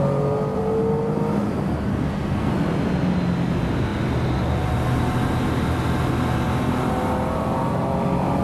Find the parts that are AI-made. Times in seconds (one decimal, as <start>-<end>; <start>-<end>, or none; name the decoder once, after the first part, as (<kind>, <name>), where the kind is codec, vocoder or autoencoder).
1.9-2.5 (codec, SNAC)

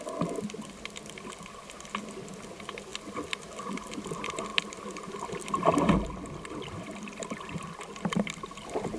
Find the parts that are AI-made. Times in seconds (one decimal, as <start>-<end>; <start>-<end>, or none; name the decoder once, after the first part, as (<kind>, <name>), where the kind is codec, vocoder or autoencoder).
2.9-3.9 (vocoder, BigVGAN v2); 4.5-7.8

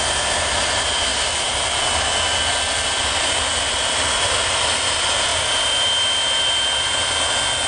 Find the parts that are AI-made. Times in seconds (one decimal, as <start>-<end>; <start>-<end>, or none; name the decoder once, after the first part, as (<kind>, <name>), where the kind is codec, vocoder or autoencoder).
none